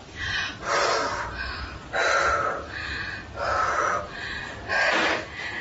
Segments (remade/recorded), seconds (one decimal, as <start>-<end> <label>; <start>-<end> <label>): 0.0-2.8 remade; 2.8-4.0 recorded; 4.0-5.6 remade